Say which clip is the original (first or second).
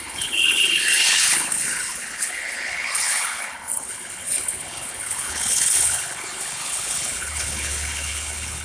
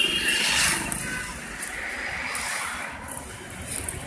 second